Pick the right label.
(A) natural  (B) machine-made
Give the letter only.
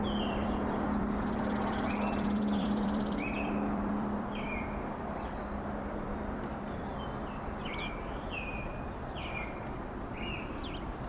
B